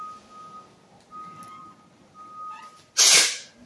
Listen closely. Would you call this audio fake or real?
real